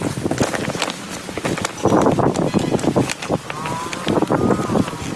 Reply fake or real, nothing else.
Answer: real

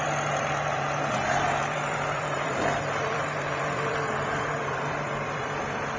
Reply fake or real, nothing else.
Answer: fake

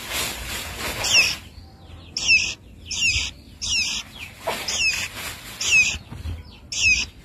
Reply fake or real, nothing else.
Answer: real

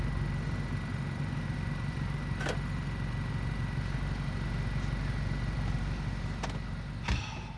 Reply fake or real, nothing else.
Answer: real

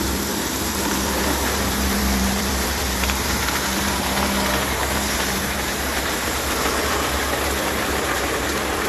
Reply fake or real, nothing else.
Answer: fake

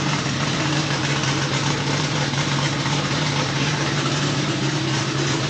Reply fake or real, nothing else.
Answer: fake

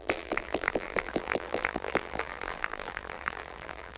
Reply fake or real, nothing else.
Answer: fake